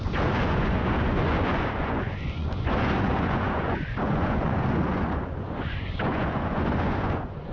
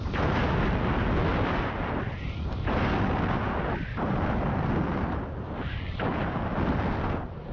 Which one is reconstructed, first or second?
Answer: first